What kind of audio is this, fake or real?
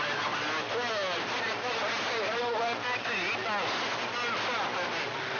real